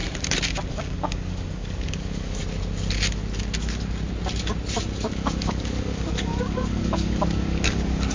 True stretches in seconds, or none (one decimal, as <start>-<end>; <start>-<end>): 0.0-0.7; 2.4-5.1